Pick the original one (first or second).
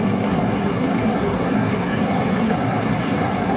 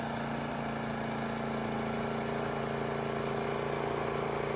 second